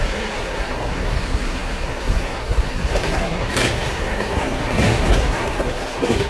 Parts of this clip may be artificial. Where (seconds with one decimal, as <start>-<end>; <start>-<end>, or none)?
0.0-6.3